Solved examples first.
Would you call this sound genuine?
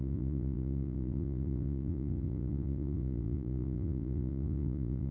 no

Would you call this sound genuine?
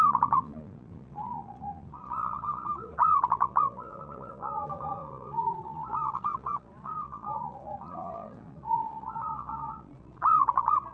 no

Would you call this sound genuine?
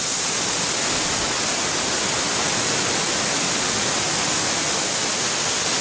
yes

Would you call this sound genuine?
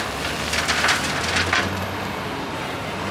yes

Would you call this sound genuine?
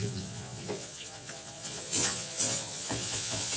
no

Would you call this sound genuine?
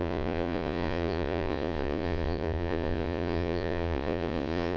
no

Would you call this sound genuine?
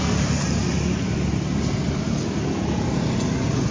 yes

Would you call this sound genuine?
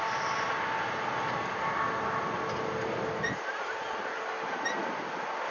yes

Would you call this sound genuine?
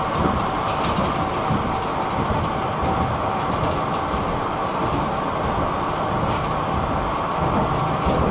yes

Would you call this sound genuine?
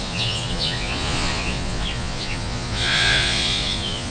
no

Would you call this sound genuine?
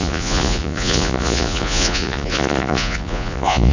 no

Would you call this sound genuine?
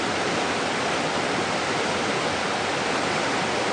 yes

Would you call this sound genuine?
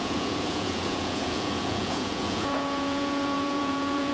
no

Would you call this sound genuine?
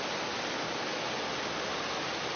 yes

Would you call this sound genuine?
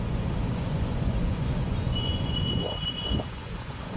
no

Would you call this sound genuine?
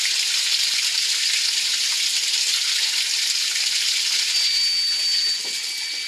yes